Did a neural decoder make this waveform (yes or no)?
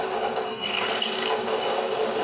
yes